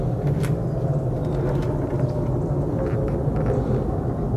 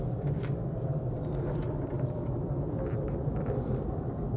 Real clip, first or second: first